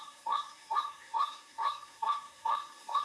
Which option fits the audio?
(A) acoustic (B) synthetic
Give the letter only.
B